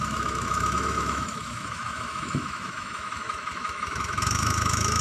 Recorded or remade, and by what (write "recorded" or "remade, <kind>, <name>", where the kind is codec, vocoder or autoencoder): remade, autoencoder, DAC-VAE